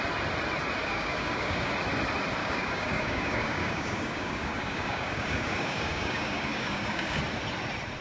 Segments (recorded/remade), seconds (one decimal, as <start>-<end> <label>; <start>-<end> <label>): 0.0-0.8 recorded; 0.8-1.7 remade; 1.7-2.4 recorded; 2.4-7.2 remade; 7.2-8.0 recorded